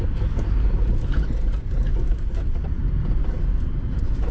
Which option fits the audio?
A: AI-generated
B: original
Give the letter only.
B